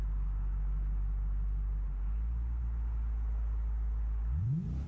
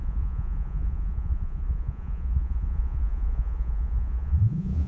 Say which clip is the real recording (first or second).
first